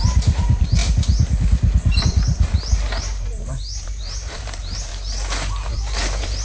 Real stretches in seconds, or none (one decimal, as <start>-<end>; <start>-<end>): 0.8-2.0; 4.9-5.7